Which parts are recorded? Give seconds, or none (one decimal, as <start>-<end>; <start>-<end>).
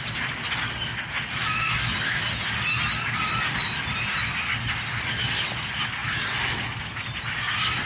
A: 0.0-7.9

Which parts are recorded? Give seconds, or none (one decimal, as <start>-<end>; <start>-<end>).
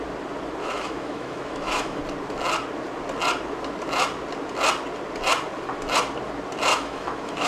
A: 0.0-0.6; 2.0-6.7